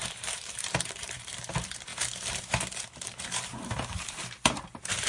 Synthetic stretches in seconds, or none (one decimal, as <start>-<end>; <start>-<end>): 0.0-5.1